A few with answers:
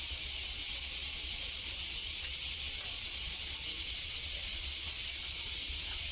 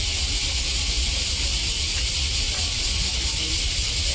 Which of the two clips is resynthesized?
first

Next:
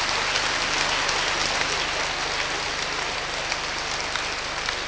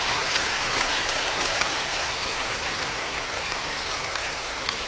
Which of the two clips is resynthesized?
second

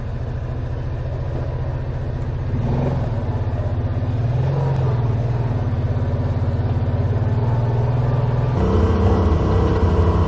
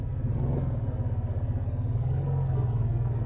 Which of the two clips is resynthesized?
second